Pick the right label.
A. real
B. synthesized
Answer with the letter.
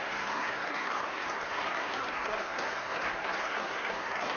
B